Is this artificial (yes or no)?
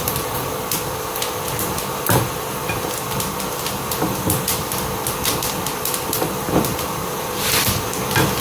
yes